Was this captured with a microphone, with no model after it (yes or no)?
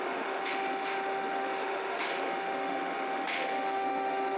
no